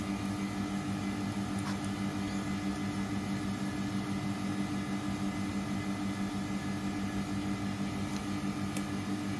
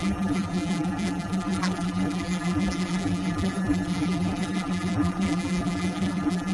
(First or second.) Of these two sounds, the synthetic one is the second